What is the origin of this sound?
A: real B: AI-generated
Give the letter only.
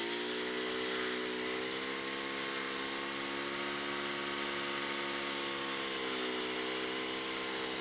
A